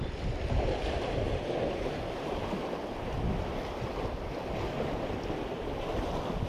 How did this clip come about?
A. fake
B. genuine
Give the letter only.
B